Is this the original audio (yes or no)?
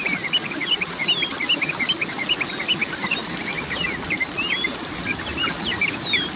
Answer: yes